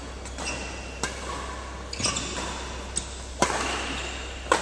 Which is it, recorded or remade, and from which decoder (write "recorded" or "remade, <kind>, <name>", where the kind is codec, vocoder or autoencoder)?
recorded